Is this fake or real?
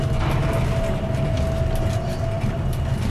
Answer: real